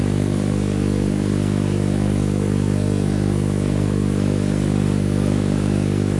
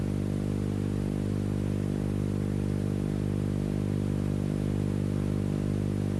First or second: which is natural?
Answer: second